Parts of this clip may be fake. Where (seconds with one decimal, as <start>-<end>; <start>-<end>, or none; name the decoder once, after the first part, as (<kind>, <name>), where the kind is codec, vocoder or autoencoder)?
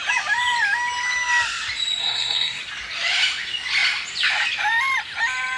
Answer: 2.0-2.6 (codec, SNAC)